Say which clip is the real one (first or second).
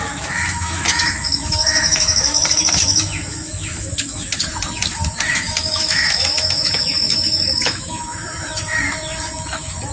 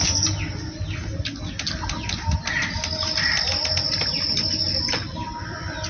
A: second